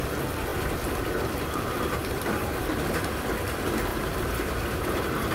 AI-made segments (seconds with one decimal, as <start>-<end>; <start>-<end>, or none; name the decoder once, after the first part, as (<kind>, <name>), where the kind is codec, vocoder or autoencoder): 2.0-2.6 (vocoder, BigVGAN v2); 3.9-5.3